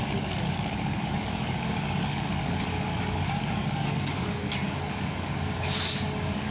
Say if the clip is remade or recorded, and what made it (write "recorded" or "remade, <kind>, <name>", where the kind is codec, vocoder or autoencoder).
remade, codec, DAC